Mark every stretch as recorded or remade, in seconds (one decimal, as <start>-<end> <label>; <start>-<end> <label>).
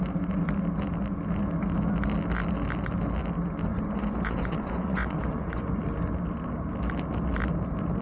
0.0-3.7 recorded; 3.7-5.7 remade; 5.7-8.0 recorded